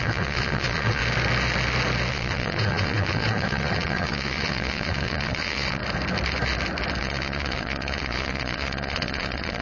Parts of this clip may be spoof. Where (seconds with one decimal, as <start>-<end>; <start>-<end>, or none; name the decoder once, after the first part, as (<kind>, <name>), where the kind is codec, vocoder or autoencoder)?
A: 0.0-1.0 (vocoder, Vocos); 2.1-5.8; 7.0-9.6